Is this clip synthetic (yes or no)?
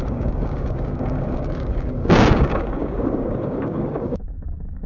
yes